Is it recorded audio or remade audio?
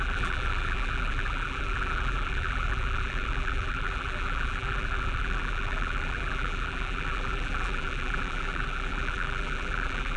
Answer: remade